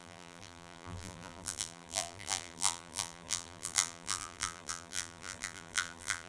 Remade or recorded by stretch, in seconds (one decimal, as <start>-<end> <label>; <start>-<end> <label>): 0.0-6.3 remade